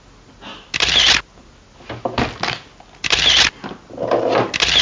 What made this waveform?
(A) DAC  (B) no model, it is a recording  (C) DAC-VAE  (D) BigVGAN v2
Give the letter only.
B